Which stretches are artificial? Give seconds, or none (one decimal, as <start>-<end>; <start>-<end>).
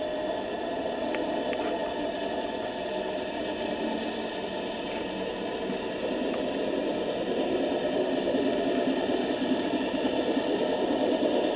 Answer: none